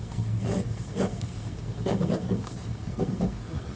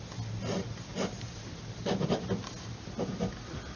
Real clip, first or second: second